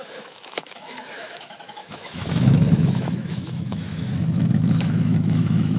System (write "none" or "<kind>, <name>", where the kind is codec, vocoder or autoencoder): autoencoder, DAC-VAE